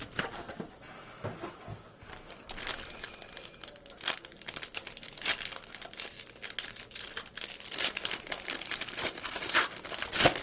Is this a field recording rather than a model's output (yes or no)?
yes